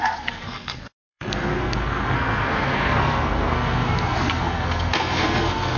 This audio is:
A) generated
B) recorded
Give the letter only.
A